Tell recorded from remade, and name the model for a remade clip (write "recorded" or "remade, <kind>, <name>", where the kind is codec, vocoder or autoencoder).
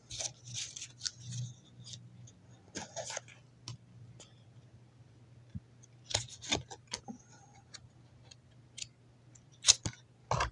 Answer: recorded